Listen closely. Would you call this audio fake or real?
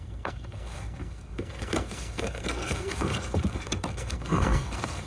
fake